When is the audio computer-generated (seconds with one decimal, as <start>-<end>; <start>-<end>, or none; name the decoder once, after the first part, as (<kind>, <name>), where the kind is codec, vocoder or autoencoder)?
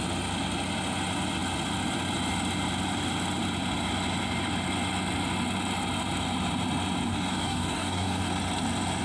7.1-8.3 (codec, DAC)